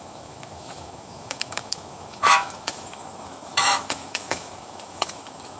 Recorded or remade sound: remade